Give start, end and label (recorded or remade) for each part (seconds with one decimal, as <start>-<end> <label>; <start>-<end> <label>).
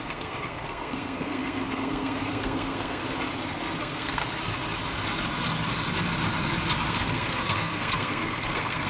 0.0-3.0 remade; 3.0-3.8 recorded; 3.8-4.2 remade; 4.2-6.9 recorded; 6.9-8.9 remade